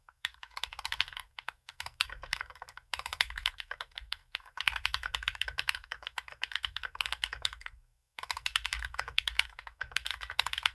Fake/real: fake